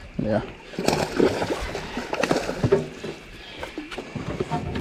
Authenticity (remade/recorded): recorded